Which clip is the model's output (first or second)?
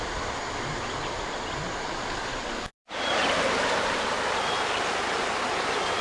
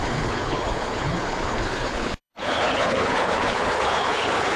second